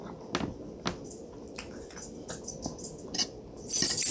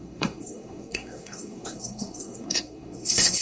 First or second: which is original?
first